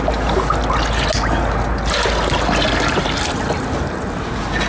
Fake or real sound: real